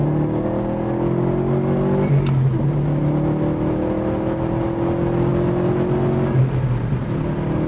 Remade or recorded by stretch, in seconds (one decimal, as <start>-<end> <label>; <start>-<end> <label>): 0.0-7.7 recorded